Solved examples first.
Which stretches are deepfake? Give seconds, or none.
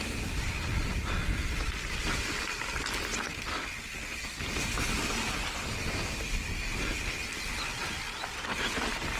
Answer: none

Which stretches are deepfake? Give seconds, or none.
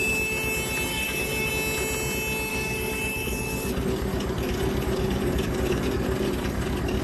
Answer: 0.9-1.5; 2.5-7.0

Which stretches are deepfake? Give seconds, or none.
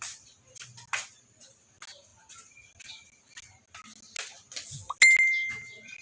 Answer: none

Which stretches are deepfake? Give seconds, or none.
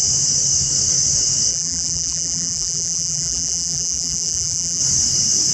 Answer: 1.5-4.8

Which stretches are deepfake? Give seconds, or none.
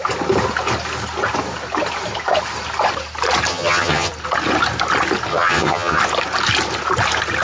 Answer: 3.5-4.1; 5.3-6.0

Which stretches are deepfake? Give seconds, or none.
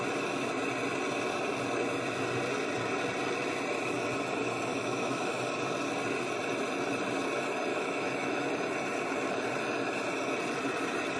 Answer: 4.7-5.3; 7.7-8.5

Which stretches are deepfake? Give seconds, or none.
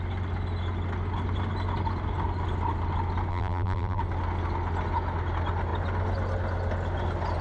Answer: 3.3-4.0